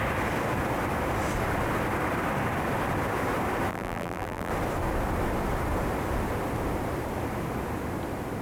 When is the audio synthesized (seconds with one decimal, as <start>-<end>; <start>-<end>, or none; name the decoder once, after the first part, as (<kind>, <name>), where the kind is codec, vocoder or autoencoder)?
3.7-4.5 (vocoder, BigVGAN v2)

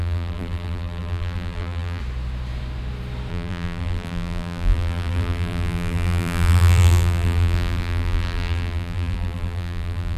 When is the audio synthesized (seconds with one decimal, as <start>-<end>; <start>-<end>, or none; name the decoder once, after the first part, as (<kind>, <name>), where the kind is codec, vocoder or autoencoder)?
0.0-2.0 (vocoder, BigVGAN v2); 3.3-10.2

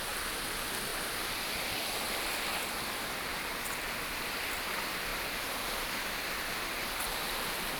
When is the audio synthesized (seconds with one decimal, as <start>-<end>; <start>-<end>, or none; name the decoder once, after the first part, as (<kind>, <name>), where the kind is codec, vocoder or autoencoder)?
0.9-2.1 (vocoder, BigVGAN v2); 5.1-6.6

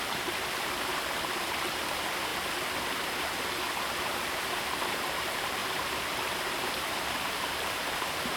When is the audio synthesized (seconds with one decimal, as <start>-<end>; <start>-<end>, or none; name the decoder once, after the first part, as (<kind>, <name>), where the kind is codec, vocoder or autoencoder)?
0.0-2.3 (vocoder, BigVGAN v2); 4.0-5.6; 6.4-8.4

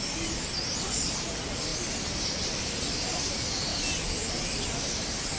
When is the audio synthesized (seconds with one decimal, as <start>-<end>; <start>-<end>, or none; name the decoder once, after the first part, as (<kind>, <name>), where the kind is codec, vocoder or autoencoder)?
none

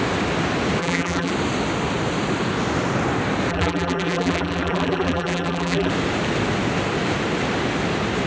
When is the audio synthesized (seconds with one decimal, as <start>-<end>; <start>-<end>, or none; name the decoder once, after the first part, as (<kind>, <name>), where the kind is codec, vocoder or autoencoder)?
0.8-1.3 (vocoder, BigVGAN v2); 3.5-5.9